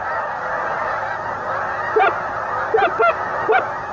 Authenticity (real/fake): real